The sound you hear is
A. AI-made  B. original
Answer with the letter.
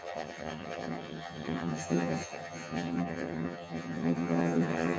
A